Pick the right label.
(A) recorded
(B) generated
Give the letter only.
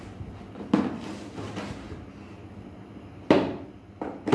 A